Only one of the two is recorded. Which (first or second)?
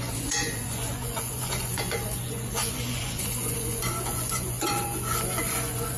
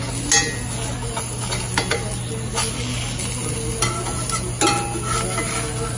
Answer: second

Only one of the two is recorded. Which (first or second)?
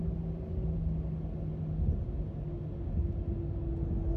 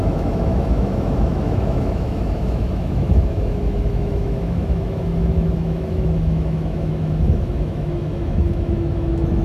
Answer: first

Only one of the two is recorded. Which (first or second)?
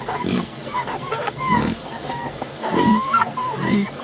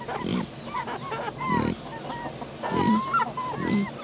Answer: second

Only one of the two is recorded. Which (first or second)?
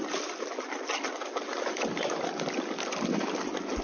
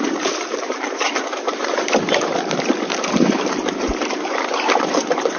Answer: first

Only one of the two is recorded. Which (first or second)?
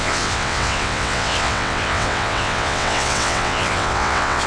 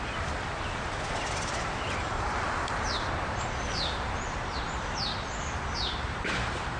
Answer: second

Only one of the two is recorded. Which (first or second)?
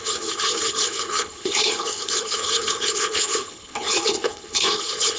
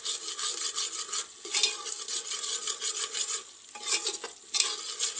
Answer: second